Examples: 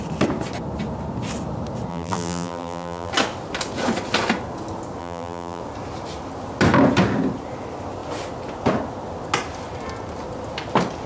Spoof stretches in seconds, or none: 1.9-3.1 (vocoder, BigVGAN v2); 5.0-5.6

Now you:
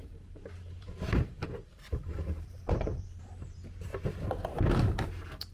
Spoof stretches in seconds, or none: 0.0-3.3 (vocoder, BigVGAN v2)

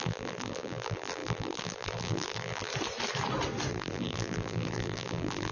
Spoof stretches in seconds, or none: 0.0-2.7 (vocoder, BigVGAN v2); 3.7-5.5

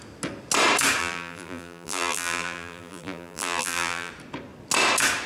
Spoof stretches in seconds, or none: 1.0-4.1 (vocoder, BigVGAN v2)

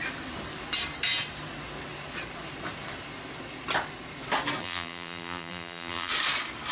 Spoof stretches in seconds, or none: 4.6-6.1 (vocoder, BigVGAN v2)

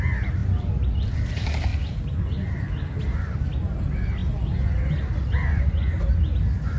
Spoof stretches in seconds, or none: none

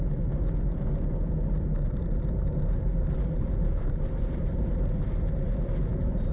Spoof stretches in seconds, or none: 2.0-4.7 (vocoder, BigVGAN v2)

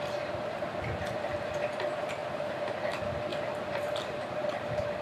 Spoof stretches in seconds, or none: none